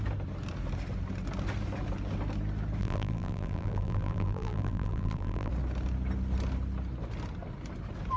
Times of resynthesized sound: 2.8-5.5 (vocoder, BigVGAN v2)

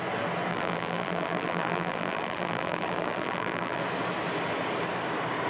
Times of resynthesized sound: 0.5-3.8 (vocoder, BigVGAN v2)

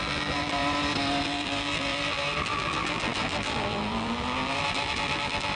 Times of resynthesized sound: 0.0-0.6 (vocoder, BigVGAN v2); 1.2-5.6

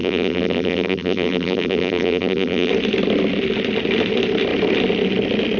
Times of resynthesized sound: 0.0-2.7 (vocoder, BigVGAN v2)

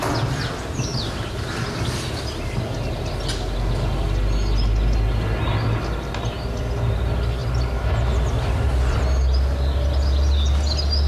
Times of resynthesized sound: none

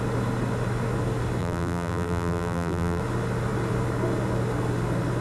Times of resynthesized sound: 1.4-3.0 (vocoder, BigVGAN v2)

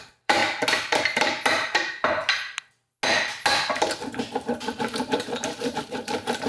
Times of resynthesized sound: 0.0-0.4 (vocoder, BigVGAN v2); 1.0-2.2; 4.6-6.5

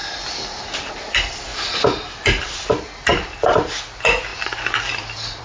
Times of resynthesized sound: 0.0-0.9 (vocoder, BigVGAN v2); 1.5-2.7; 3.1-3.8; 4.3-5.4